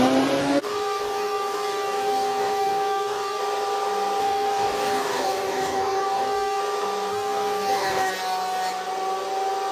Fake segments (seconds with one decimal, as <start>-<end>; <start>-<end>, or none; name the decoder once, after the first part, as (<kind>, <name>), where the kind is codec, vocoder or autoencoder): 0.4-3.4 (codec, DAC); 4.2-6.6; 7.1-8.1